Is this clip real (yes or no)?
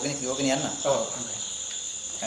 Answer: yes